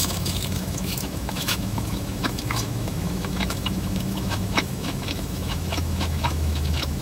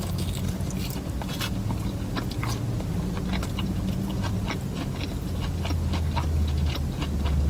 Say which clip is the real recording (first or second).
second